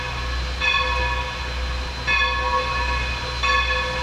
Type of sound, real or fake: real